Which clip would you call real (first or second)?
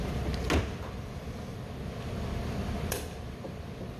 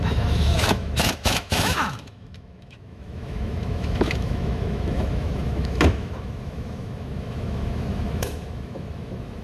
first